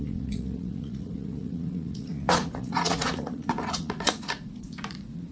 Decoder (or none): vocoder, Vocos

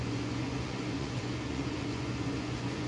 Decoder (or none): vocoder, Vocos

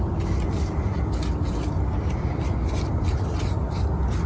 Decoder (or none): none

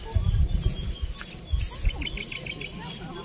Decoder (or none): none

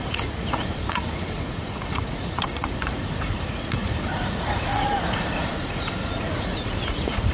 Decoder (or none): vocoder, Vocos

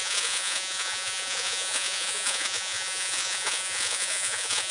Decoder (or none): vocoder, Vocos